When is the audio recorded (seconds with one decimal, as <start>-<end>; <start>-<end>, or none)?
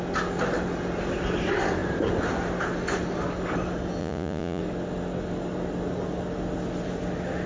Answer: 0.0-4.0; 4.6-7.5